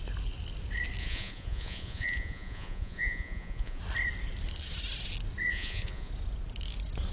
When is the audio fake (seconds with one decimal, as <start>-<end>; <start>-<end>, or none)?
1.0-3.8; 5.5-6.1